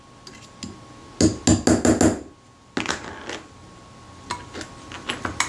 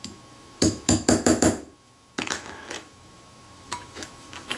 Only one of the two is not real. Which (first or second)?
second